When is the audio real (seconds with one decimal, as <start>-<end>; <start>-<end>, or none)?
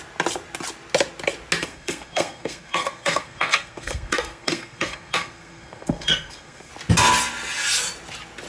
0.0-1.6; 6.7-8.5